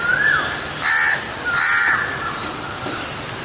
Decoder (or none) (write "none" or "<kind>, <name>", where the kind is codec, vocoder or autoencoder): none